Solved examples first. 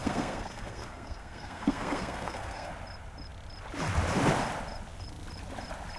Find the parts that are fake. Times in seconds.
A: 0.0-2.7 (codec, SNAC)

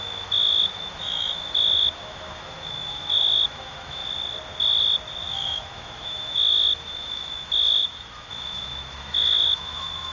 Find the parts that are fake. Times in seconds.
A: 0.0-4.0 (autoencoder, DAC-VAE); 5.3-10.1

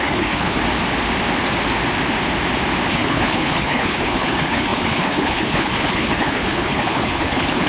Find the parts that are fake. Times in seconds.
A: 0.0-0.6 (codec, HILCodec); 2.9-7.7